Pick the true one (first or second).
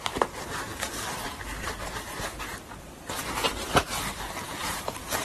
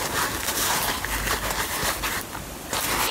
second